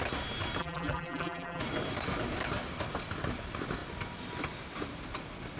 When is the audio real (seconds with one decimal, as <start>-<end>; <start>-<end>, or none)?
0.0-0.6; 1.6-5.6